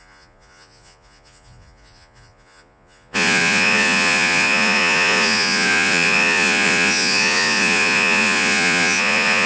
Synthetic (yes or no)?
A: yes